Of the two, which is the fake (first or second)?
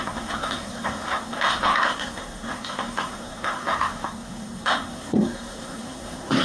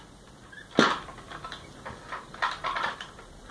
first